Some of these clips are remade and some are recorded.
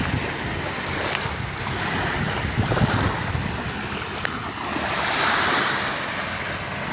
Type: recorded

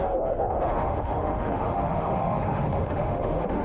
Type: remade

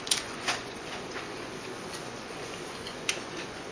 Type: remade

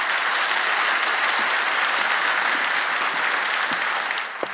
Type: recorded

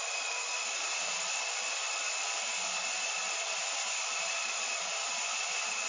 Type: recorded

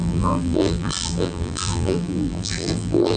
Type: remade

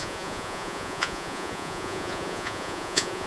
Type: remade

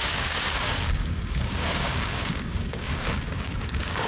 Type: remade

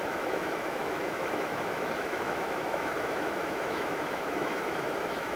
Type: remade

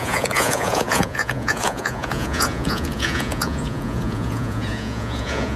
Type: remade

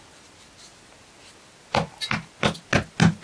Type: recorded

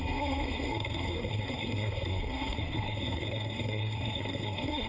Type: remade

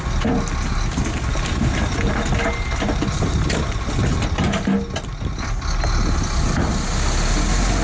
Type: recorded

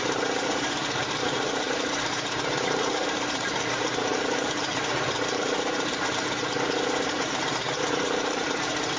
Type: remade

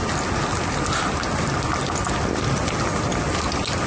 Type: recorded